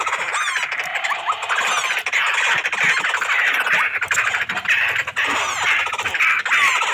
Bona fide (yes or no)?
yes